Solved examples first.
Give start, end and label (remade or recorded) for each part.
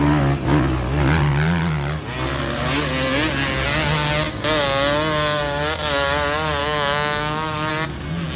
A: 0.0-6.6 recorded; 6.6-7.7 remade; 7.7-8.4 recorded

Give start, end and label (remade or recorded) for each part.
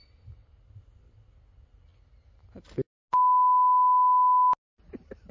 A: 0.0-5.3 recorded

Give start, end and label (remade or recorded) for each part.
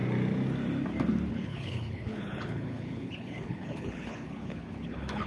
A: 0.0-1.3 recorded; 1.3-5.3 remade